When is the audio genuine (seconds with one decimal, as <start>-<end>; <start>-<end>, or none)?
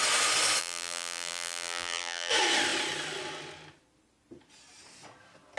0.0-0.6; 2.3-5.6